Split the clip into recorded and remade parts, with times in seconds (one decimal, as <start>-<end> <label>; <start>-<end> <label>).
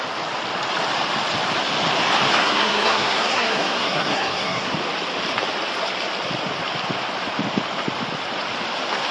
0.0-2.4 recorded; 2.4-4.7 remade; 4.7-9.1 recorded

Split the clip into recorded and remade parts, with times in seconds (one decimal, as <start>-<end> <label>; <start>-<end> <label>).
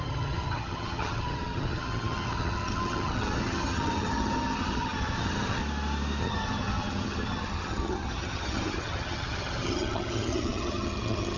0.0-5.6 remade; 5.6-6.2 recorded; 6.2-11.4 remade